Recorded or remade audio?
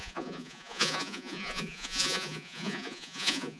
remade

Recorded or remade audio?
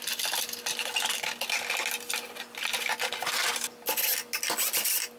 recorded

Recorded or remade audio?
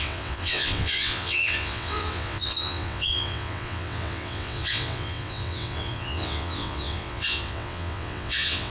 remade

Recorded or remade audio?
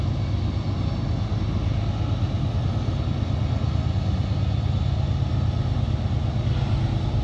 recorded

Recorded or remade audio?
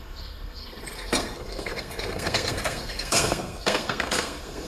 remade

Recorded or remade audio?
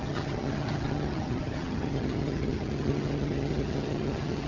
remade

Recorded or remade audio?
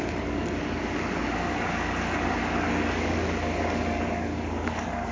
remade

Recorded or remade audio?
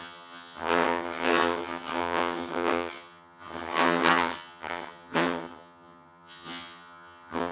remade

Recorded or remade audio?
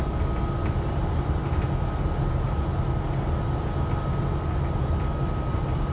recorded